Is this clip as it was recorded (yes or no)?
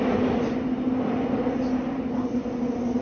yes